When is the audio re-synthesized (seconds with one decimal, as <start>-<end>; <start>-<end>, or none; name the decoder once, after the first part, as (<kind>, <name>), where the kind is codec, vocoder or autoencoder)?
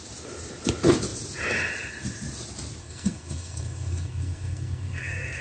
2.8-5.4 (codec, SNAC)